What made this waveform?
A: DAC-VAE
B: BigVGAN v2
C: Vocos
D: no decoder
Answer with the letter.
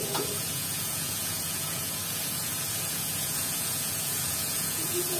C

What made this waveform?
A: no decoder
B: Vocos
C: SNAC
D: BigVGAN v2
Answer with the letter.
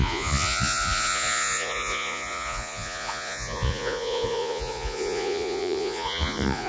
B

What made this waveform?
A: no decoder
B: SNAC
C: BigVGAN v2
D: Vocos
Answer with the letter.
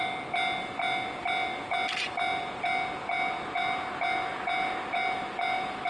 A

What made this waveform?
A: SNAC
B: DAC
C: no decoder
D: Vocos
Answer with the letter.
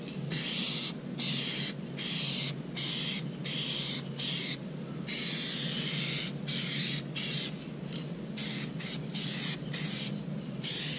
C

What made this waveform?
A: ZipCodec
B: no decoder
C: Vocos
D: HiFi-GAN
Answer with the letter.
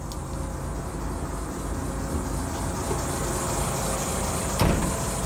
B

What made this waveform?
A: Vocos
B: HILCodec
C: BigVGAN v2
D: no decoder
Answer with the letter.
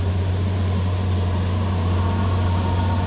D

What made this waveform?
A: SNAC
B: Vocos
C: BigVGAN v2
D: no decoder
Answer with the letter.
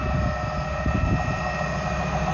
D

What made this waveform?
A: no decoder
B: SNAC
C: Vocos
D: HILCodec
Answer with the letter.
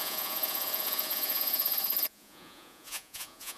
C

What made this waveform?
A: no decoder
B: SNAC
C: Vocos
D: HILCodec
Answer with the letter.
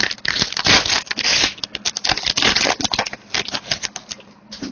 A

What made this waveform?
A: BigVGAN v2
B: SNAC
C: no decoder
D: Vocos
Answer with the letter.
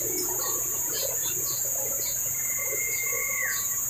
D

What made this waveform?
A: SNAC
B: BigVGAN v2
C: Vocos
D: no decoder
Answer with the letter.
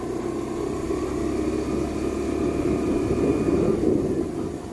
D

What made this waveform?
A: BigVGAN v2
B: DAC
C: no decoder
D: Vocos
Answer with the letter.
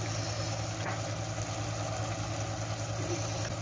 C